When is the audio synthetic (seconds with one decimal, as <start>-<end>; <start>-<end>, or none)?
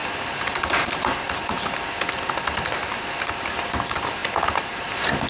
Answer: none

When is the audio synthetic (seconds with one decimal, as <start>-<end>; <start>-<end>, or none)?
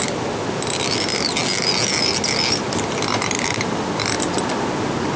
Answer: none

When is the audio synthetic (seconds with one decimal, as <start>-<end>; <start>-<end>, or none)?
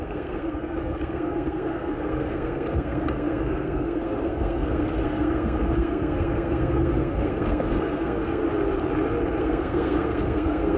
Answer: 0.0-8.4; 9.4-10.8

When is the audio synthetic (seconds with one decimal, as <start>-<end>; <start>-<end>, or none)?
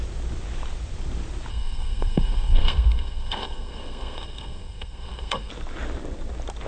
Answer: 1.5-5.5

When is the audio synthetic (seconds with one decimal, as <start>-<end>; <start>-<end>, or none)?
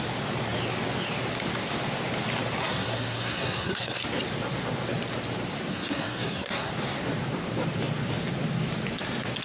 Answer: 2.6-4.0; 5.7-6.7